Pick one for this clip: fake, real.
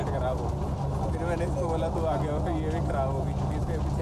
real